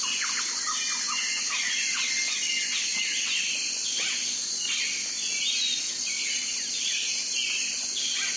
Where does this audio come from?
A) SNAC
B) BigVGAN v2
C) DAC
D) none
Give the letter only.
D